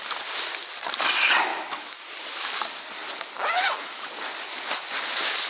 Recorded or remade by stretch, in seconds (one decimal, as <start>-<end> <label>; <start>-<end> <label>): 0.0-1.5 recorded; 1.5-2.1 remade; 2.1-5.5 recorded